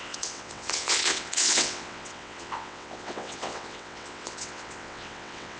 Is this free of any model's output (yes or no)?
no